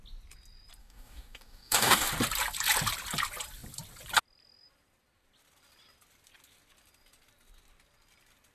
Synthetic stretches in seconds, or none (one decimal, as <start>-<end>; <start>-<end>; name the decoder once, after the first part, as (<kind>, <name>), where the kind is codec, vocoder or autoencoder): 0.8-2.1 (codec, DAC)